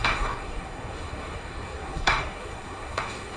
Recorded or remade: remade